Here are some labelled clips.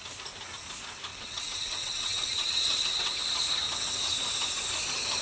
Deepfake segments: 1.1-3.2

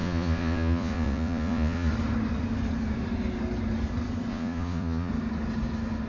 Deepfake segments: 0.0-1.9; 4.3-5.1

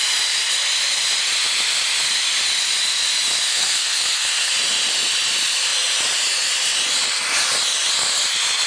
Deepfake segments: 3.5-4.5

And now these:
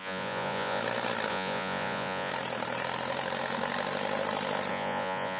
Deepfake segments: 0.0-0.8; 1.3-2.3; 4.7-5.4